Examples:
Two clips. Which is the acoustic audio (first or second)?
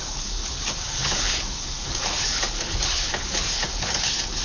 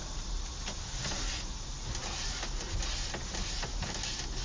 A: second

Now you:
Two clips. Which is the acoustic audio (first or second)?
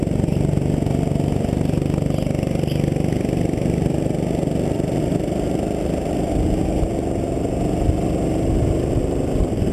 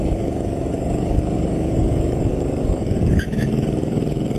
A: first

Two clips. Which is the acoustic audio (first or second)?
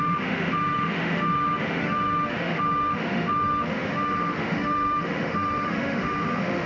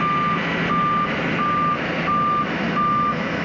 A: second